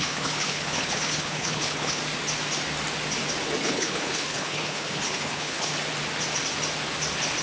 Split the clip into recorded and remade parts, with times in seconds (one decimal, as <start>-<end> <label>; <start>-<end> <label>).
0.0-2.0 remade; 2.0-3.6 recorded; 3.6-5.7 remade; 5.7-7.4 recorded